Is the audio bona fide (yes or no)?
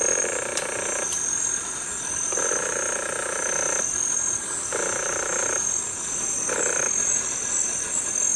yes